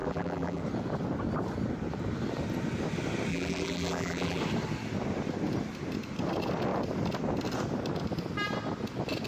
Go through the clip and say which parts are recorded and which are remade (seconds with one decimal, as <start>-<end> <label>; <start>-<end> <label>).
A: 0.0-0.6 remade; 0.6-3.3 recorded; 3.3-4.4 remade; 4.4-9.3 recorded